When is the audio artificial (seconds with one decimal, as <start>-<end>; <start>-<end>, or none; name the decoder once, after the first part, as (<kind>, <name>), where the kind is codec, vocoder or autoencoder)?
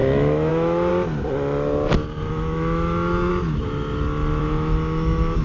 0.0-0.9 (autoencoder, DAC-VAE); 2.3-3.3; 4.4-5.4